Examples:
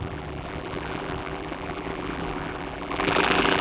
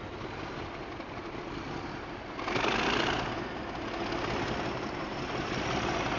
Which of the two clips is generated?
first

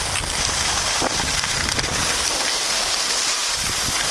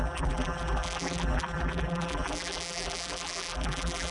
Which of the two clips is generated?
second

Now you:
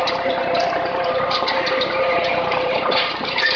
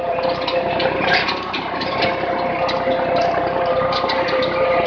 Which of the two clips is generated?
first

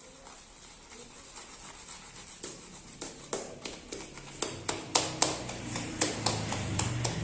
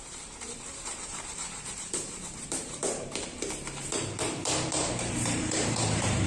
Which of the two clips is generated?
second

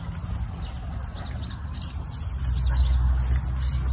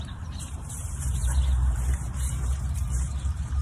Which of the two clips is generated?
second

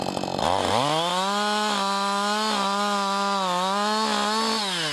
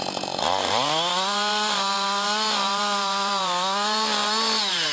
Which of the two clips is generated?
second